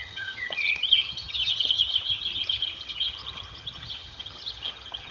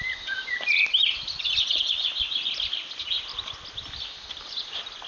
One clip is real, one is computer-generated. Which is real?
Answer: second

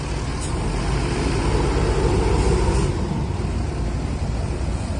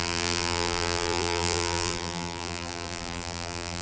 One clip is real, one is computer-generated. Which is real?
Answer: first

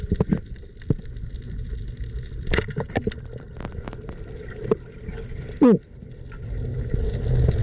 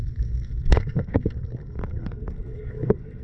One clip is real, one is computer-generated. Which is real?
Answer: first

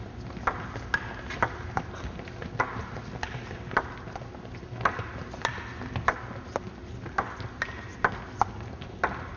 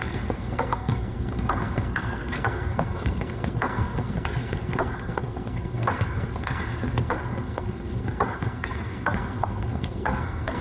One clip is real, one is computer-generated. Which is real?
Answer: first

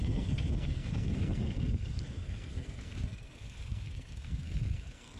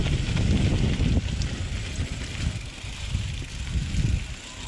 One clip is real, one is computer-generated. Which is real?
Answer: second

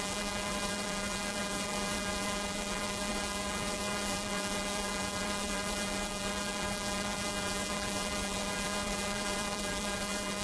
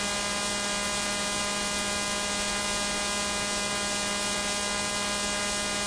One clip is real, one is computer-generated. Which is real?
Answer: second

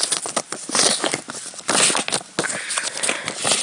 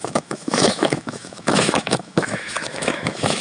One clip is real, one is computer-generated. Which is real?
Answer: first